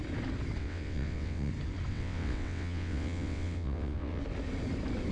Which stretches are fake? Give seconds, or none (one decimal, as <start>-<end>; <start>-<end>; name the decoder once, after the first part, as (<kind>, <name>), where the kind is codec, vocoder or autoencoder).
0.6-1.5 (vocoder, WaveNeXt); 1.9-4.2